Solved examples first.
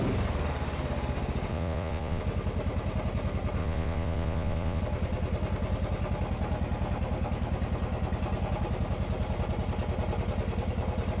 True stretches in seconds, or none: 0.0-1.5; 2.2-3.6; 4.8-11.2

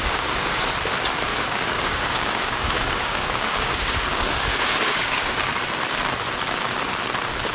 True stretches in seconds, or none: 0.6-1.3; 5.5-7.5

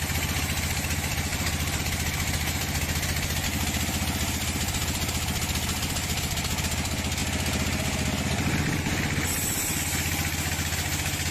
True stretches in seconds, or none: 0.0-1.3; 1.8-11.3